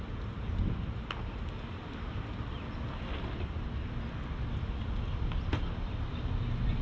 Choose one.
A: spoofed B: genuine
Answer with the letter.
B